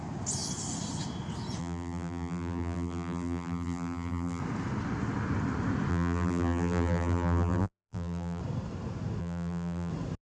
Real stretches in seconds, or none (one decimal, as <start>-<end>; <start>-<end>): 0.0-1.6; 4.4-5.9; 8.4-9.2; 9.9-10.3